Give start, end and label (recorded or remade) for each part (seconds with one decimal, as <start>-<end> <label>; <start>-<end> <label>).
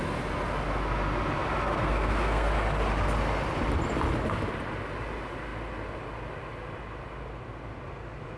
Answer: 0.0-1.7 recorded; 1.7-2.5 remade; 2.5-8.4 recorded